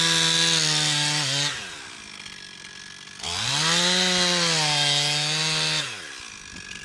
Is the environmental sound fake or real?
real